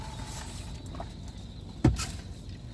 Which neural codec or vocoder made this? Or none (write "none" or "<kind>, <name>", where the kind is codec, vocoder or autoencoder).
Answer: none